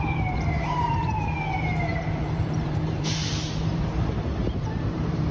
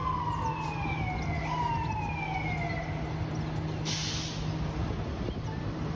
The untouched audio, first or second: second